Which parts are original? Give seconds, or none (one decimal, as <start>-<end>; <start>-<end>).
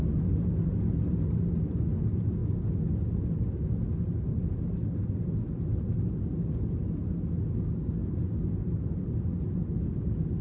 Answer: 0.0-10.4